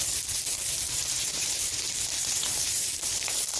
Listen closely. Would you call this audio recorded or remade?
remade